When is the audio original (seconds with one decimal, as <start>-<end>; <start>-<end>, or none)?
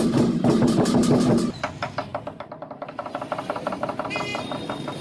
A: 0.0-5.0